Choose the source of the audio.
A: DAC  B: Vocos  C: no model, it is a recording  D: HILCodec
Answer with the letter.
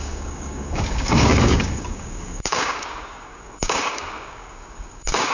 A